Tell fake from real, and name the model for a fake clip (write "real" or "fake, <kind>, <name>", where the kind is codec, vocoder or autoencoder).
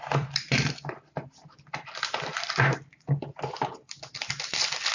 fake, vocoder, BigVGAN v2